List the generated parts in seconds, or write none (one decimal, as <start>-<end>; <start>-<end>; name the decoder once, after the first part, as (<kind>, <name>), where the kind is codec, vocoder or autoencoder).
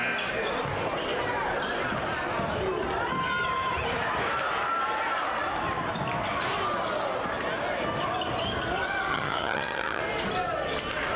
9.1-10.0 (vocoder, HiFi-GAN)